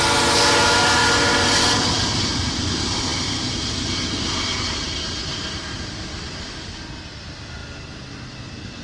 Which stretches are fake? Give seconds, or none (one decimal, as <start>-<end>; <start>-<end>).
none

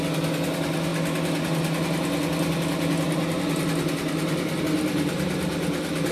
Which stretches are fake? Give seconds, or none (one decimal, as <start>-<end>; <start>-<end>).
none